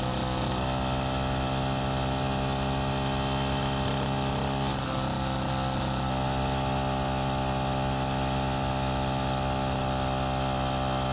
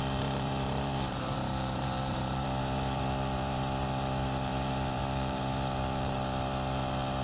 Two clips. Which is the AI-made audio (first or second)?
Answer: second